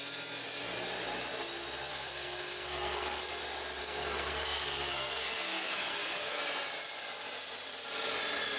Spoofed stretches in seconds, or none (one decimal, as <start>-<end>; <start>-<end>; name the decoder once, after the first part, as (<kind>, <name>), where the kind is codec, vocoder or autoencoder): 1.9-3.4 (codec, SNAC); 3.8-6.4